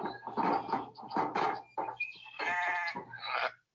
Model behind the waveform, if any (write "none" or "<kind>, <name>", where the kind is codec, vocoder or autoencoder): none